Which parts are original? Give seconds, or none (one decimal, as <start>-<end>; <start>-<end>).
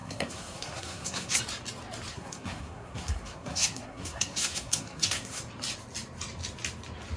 1.4-2.1; 5.4-7.2